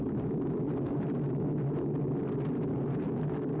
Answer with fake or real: real